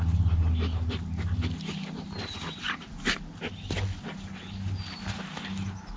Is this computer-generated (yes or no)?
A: no